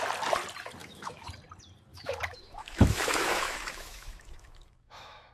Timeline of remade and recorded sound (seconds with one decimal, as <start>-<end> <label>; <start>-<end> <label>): 0.0-0.8 recorded; 0.8-1.3 remade; 1.3-1.9 recorded; 1.9-5.3 remade